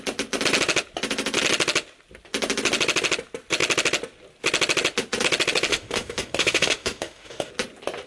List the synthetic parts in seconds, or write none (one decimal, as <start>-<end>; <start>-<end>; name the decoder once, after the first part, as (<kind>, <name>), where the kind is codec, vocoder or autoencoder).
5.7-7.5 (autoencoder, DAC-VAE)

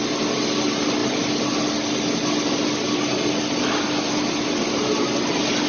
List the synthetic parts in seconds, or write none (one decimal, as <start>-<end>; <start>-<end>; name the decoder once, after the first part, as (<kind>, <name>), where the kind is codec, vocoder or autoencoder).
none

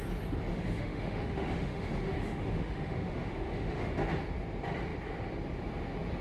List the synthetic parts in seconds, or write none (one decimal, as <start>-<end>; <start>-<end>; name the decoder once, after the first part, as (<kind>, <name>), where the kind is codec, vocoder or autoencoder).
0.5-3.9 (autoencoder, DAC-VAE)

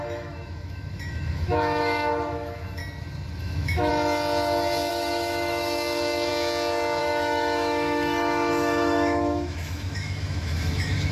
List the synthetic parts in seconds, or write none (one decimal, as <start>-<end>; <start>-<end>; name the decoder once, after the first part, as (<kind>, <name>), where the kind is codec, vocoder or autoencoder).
0.0-2.8 (autoencoder, DAC-VAE); 3.4-3.9; 4.9-6.3; 7.0-11.1

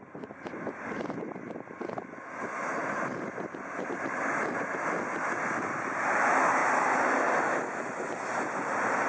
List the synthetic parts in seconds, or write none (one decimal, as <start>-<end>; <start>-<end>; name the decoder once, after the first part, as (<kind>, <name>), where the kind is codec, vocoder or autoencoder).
none

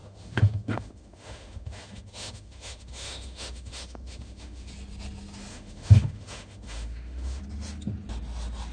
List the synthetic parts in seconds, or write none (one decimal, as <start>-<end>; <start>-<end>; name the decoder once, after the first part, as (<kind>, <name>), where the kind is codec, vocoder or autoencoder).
0.0-4.7 (autoencoder, DAC-VAE); 5.5-7.4

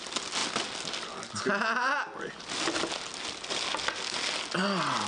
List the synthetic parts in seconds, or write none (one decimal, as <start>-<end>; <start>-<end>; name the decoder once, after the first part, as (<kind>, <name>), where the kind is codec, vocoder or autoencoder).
none